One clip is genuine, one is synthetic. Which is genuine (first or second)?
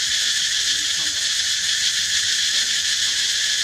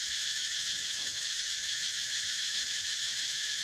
first